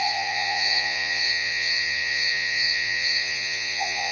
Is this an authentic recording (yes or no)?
no